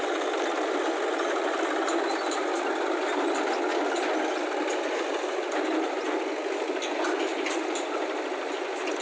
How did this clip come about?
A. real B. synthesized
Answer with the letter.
A